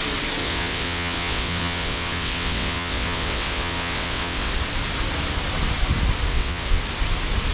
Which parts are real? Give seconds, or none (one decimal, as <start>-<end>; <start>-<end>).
0.0-0.4; 4.5-6.3; 6.8-7.5